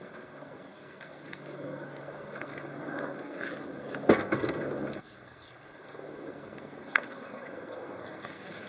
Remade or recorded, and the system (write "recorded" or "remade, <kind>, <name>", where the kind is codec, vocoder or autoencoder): remade, codec, SNAC